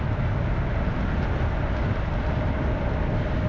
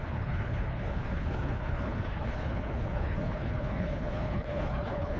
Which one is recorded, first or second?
first